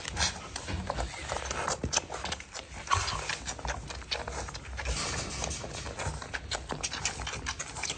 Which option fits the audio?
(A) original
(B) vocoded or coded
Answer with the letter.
A